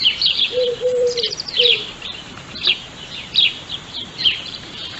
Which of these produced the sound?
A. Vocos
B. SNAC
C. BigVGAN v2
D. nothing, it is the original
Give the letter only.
C